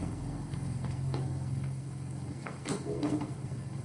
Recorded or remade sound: remade